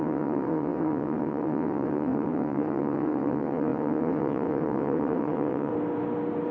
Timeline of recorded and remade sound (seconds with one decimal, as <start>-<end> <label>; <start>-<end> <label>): 0.0-5.7 remade; 5.7-6.5 recorded